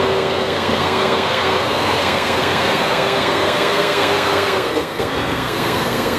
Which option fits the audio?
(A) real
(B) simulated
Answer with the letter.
B